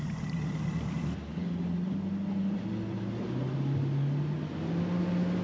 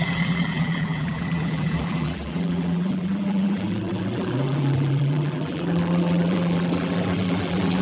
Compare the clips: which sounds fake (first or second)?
second